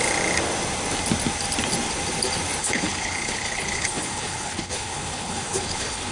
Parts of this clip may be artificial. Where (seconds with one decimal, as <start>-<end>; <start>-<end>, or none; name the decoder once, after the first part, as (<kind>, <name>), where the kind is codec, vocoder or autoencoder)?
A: 2.6-6.1 (codec, HILCodec)